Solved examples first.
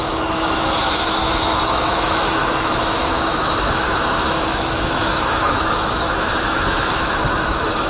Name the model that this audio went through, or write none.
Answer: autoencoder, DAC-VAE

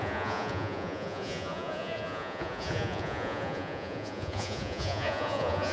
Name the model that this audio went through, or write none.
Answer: vocoder, Vocos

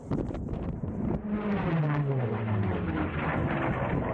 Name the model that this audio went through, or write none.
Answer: vocoder, BigVGAN v2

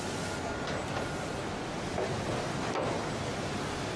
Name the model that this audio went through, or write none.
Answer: none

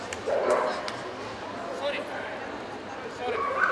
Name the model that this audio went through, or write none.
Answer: none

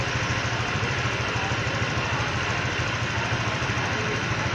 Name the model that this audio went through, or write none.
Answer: vocoder, BigVGAN v2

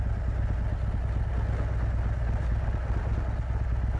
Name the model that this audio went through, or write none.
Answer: none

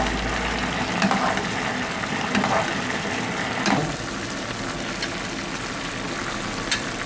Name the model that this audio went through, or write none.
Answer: none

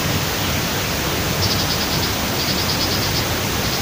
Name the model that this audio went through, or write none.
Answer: none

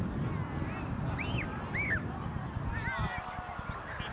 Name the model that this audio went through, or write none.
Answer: none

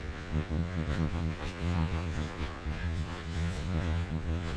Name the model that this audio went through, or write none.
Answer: vocoder, Vocos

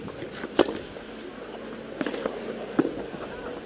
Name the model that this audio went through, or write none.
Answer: none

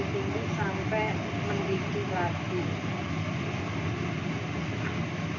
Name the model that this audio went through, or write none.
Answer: none